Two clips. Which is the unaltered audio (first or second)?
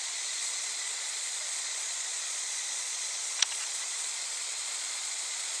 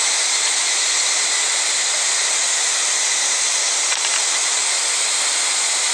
second